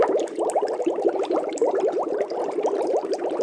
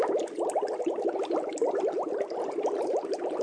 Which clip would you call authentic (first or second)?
second